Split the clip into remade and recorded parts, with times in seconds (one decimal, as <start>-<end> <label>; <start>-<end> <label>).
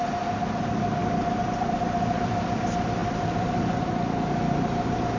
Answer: 0.0-1.0 recorded; 1.0-2.6 remade; 2.6-3.0 recorded; 3.0-3.8 remade; 3.8-5.2 recorded